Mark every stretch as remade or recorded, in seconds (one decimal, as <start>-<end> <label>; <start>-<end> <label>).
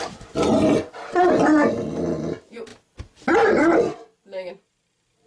0.0-5.3 recorded